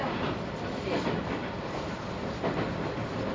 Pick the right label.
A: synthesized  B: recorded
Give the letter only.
B